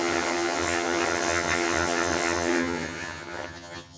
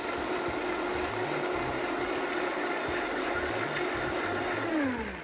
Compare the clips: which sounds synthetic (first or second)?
first